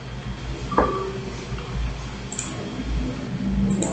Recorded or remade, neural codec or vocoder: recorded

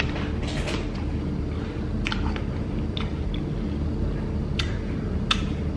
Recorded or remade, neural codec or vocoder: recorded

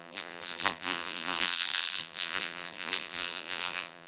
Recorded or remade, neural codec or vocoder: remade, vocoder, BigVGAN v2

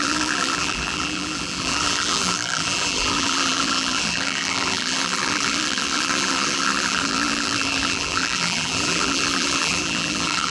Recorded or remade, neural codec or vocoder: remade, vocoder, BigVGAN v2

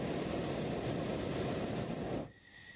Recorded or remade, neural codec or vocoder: recorded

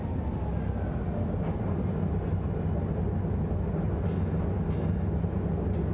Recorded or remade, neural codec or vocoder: recorded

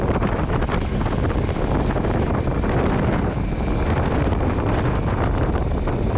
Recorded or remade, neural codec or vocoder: recorded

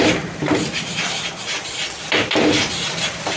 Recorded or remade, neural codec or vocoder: remade, vocoder, BigVGAN v2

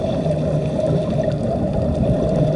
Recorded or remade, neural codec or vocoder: remade, vocoder, BigVGAN v2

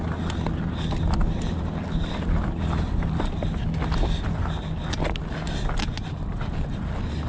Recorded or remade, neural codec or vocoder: recorded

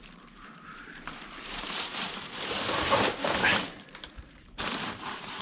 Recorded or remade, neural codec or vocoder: remade, vocoder, BigVGAN v2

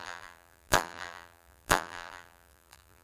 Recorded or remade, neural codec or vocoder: remade, vocoder, BigVGAN v2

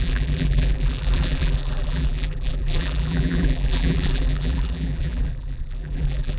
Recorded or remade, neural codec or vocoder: remade, vocoder, BigVGAN v2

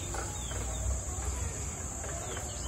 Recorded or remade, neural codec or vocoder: recorded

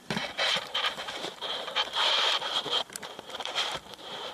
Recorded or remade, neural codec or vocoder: remade, vocoder, BigVGAN v2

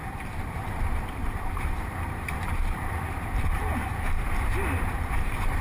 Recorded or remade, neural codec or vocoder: remade, vocoder, BigVGAN v2